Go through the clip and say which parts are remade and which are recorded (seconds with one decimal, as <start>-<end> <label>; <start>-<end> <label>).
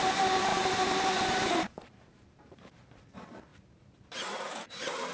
0.0-0.5 recorded; 0.5-3.0 remade; 3.0-3.5 recorded; 3.5-5.1 remade